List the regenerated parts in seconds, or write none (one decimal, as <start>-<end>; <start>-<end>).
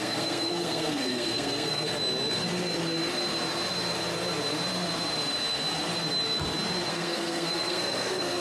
0.0-1.9; 6.9-8.4